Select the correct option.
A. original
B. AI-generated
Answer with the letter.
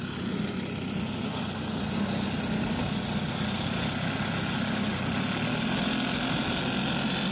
A